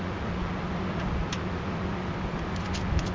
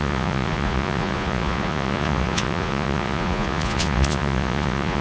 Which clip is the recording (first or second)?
first